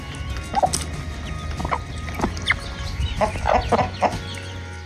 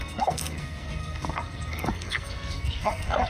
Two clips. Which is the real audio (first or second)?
first